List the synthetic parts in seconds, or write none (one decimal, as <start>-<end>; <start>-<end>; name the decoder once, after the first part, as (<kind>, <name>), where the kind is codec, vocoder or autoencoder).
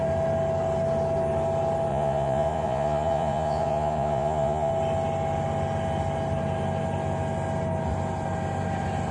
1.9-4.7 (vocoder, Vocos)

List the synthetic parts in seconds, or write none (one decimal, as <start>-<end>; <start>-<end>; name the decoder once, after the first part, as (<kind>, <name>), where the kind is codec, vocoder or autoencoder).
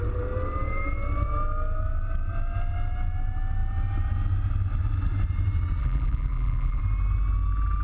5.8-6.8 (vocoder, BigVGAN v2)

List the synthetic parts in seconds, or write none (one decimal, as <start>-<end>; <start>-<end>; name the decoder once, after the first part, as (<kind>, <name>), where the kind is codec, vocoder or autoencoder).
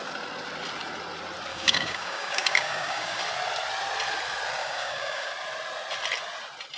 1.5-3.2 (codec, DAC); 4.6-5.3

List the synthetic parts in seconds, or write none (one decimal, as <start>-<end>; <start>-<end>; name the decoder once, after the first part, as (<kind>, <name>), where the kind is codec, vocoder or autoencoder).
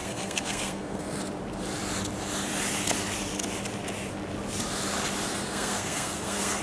0.0-1.2 (codec, SNAC); 5.3-6.6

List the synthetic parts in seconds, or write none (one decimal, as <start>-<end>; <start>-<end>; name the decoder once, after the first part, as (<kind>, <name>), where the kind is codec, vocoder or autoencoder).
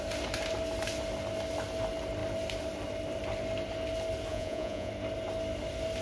4.3-4.9 (vocoder, Vocos)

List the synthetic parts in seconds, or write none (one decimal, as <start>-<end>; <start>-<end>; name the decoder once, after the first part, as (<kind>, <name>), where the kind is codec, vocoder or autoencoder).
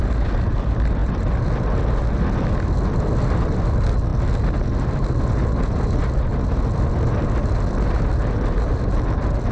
none